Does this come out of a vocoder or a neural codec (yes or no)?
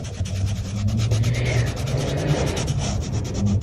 yes